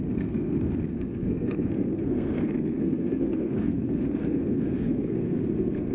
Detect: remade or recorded remade